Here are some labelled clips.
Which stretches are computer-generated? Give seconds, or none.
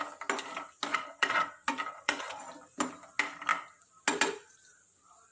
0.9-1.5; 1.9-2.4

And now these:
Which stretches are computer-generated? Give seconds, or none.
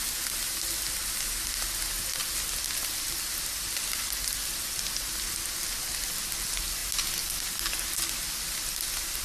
6.8-7.7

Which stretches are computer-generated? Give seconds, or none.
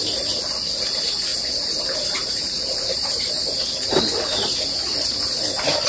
1.3-3.3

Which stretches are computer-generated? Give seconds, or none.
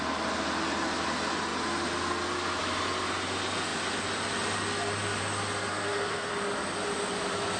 5.7-6.3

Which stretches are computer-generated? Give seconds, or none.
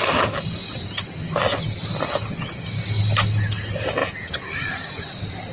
4.0-4.5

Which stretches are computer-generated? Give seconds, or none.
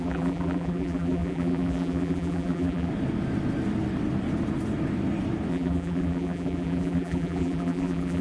0.0-2.9; 5.5-8.2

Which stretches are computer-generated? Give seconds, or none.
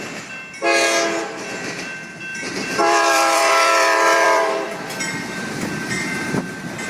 2.3-6.4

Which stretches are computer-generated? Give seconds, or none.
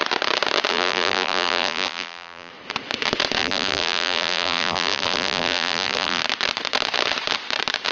0.7-2.5; 3.4-6.2